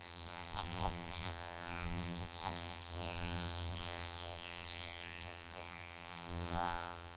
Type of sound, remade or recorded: remade